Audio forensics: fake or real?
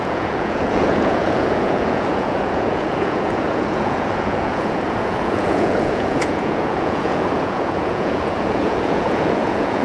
fake